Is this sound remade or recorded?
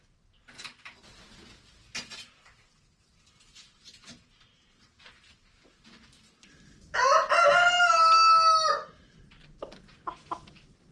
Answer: recorded